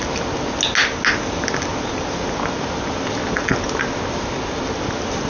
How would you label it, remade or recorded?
recorded